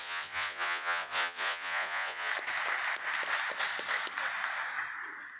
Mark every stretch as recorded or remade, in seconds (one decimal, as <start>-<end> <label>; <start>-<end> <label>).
0.0-2.3 remade; 2.3-5.4 recorded